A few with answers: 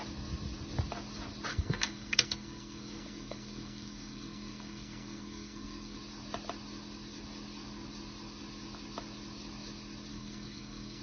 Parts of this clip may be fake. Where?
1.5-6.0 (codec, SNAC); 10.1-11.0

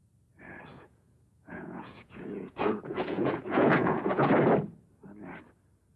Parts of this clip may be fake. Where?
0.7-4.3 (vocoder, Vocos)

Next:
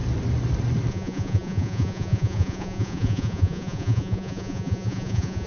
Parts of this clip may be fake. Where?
0.9-5.5 (vocoder, Vocos)